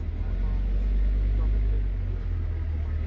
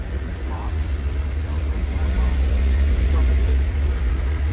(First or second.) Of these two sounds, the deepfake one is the second